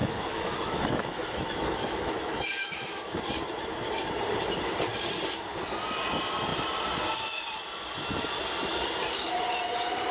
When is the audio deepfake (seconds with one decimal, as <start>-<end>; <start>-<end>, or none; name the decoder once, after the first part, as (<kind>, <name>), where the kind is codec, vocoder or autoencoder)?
0.0-3.2 (autoencoder, DAC-VAE)